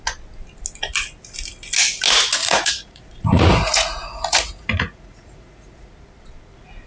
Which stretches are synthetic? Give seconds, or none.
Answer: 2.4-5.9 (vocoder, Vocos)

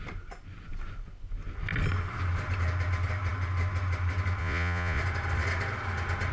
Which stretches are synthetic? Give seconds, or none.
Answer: 4.4-5.0 (vocoder, Vocos)

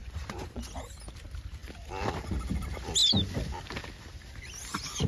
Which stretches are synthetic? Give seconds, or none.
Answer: 0.0-0.7 (vocoder, Vocos)